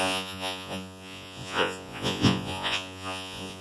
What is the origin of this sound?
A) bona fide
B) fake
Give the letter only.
B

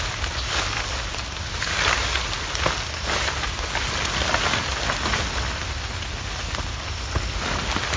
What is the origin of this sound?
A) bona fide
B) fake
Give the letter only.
A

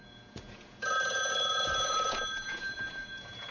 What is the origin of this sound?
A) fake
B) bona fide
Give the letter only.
A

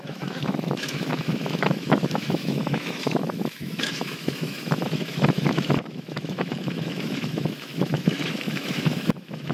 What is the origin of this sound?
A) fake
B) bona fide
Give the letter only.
A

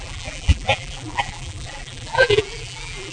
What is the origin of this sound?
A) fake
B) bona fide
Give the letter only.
A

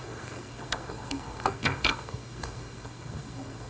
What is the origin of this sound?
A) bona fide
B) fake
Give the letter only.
B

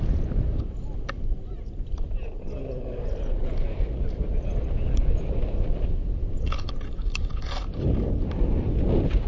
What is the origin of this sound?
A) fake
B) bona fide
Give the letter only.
B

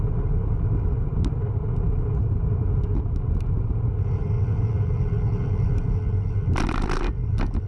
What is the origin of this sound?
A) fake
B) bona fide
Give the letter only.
B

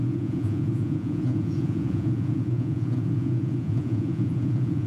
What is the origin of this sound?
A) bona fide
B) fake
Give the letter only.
B